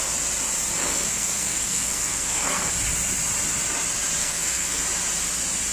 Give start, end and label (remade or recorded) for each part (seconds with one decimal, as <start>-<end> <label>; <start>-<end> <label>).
0.0-0.8 recorded; 0.8-2.7 remade; 2.7-4.2 recorded; 4.2-4.8 remade; 4.8-5.7 recorded